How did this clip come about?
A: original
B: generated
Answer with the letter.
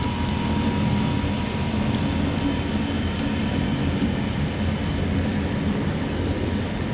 A